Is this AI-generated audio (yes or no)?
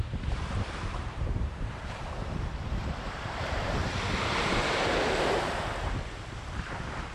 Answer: yes